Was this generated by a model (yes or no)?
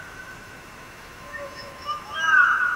yes